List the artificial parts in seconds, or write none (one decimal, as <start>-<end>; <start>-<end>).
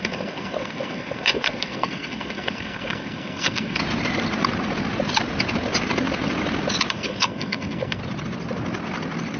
0.0-3.8; 6.9-8.0